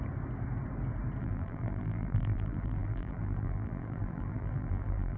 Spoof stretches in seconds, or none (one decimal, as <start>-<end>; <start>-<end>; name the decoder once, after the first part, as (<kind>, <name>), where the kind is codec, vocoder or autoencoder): 1.2-5.2 (vocoder, BigVGAN v2)